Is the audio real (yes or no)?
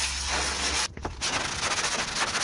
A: yes